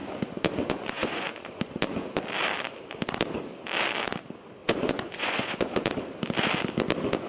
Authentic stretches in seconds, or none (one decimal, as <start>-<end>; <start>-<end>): 2.2-4.6; 5.9-7.3